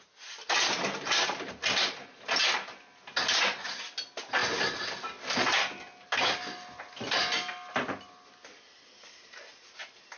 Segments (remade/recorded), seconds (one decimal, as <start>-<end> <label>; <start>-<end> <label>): 0.0-10.2 recorded